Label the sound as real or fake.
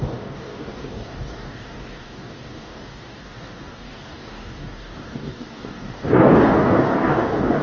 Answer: fake